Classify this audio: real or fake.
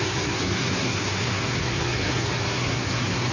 fake